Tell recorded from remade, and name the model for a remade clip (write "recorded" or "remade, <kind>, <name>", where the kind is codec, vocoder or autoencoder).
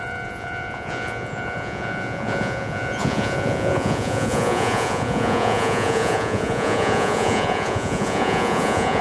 remade, vocoder, Vocos